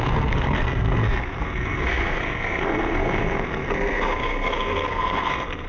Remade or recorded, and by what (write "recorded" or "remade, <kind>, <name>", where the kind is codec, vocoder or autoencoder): remade, codec, SNAC